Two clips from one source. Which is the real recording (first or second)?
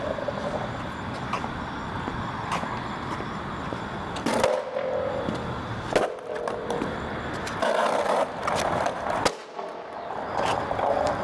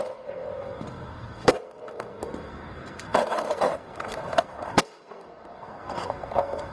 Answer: first